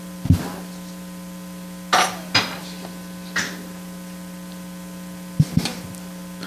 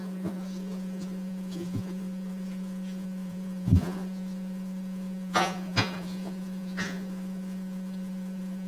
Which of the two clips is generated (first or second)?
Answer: second